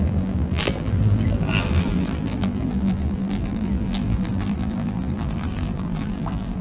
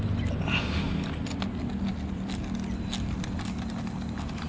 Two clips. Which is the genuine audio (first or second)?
second